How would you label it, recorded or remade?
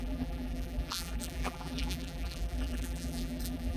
remade